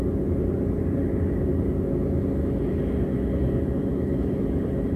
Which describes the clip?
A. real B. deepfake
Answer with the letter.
A